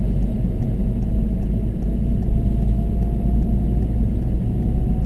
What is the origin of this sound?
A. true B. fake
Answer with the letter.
A